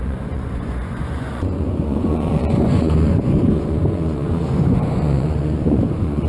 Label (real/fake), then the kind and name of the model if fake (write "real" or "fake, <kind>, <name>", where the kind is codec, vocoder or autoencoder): fake, vocoder, Vocos